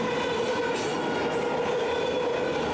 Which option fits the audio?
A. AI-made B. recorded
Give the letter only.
B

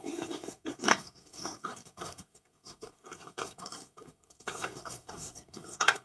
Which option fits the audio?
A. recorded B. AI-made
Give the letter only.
B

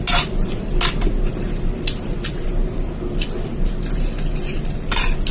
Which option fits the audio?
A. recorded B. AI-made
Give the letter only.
A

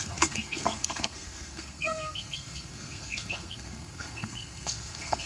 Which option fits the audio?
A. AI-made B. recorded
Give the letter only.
A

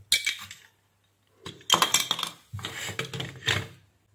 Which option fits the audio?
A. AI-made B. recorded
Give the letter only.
B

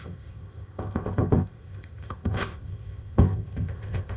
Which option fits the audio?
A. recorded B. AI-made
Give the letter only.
B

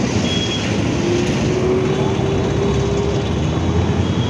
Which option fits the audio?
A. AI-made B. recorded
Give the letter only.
B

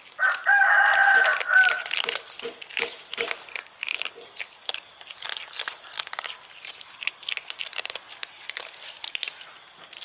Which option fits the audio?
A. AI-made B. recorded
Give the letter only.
B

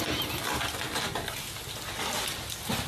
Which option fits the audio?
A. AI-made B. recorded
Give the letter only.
B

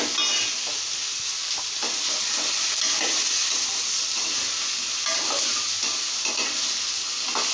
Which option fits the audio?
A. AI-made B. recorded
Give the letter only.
B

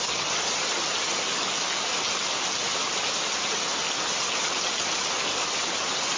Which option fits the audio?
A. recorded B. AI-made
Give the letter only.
A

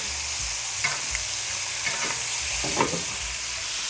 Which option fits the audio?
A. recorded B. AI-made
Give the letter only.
A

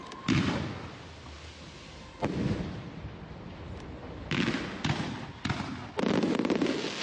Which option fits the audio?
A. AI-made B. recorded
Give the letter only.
B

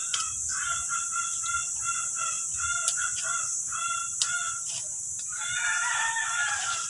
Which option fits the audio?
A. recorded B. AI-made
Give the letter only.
A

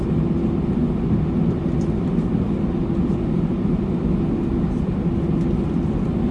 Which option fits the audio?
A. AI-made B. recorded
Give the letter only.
B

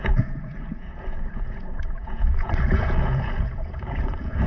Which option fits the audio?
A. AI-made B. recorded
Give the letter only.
A